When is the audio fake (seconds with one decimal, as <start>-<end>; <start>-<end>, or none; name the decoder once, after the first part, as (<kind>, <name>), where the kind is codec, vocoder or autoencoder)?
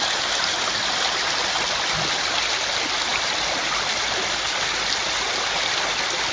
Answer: none